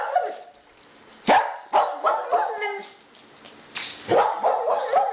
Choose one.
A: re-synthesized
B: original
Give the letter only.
B